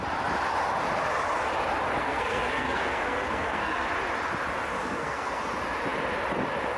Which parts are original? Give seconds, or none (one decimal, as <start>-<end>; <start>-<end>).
0.0-2.0; 3.9-4.8; 5.4-6.8